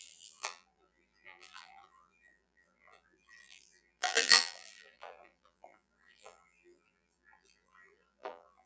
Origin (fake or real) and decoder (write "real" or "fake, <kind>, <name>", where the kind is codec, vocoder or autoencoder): fake, vocoder, BigVGAN v2